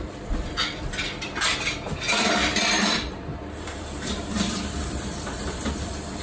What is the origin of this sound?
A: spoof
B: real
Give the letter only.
A